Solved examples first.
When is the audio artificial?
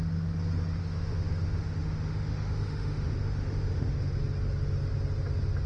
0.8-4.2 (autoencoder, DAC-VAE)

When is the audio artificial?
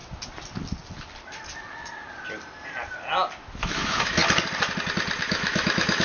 3.6-4.2 (autoencoder, DAC-VAE); 5.2-6.0